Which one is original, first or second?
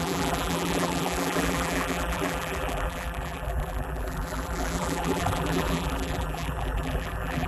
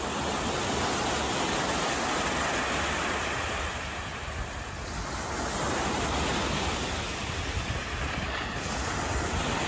second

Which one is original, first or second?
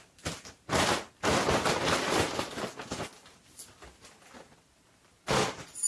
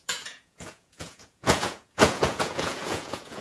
first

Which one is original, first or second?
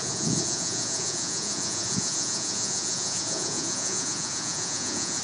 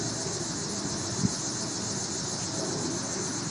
second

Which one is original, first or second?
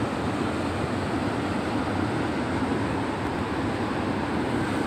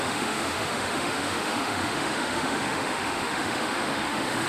first